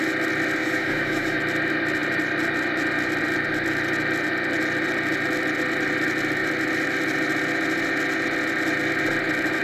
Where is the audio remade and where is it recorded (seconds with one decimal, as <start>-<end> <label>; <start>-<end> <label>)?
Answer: 0.0-0.6 recorded; 0.6-1.4 remade; 1.4-9.6 recorded